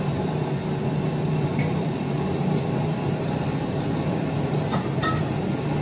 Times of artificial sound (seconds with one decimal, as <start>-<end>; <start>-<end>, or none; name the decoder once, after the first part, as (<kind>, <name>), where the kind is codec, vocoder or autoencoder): 1.1-4.6 (vocoder, BigVGAN v2)